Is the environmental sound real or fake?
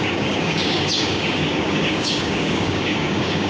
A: fake